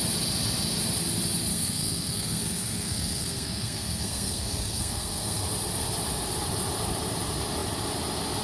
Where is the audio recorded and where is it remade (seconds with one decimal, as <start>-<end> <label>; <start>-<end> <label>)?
0.0-1.5 recorded; 1.5-5.4 remade; 5.4-8.4 recorded